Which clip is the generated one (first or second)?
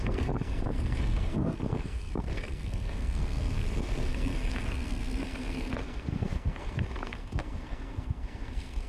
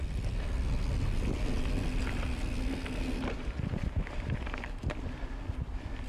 first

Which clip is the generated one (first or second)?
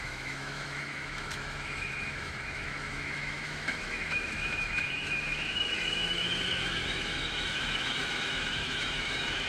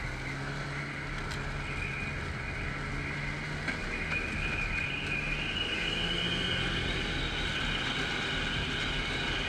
first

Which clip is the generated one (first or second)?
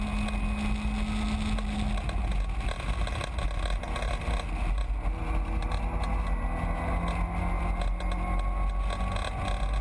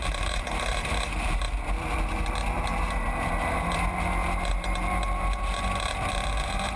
second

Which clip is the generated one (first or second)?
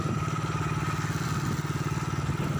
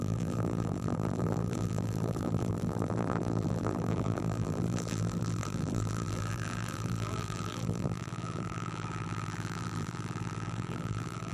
second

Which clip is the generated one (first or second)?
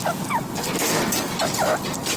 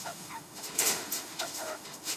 second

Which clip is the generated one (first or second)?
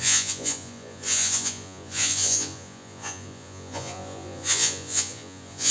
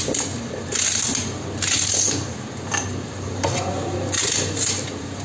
first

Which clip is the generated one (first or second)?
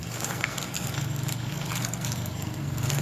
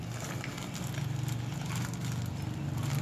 first